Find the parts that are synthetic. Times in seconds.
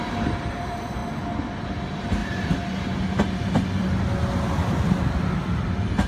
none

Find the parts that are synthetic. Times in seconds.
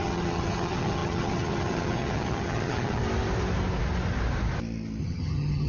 0.0-3.0; 5.0-5.7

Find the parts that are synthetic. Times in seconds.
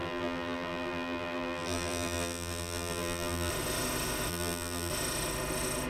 0.0-3.5; 4.3-4.9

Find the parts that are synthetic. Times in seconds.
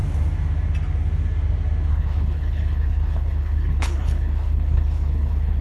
1.9-5.6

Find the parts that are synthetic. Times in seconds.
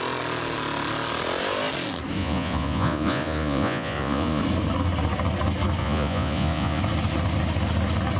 2.2-4.4; 5.8-6.8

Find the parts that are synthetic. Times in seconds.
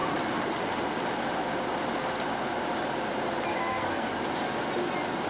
3.5-4.1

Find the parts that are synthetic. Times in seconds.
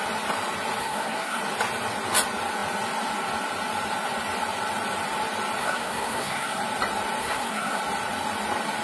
0.8-1.4; 5.6-6.6; 7.2-7.8